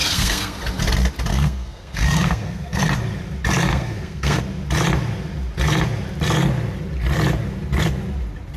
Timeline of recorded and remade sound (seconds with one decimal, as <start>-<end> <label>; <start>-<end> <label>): 0.0-0.6 remade; 0.6-1.3 recorded; 1.3-2.8 remade; 2.8-3.7 recorded; 3.7-4.4 remade; 4.4-8.6 recorded